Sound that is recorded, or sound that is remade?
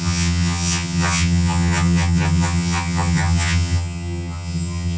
remade